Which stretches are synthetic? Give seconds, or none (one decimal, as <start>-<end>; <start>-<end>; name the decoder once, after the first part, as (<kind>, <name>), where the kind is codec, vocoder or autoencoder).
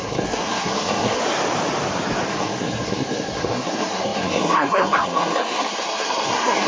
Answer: 0.0-1.2 (codec, SNAC); 2.3-6.7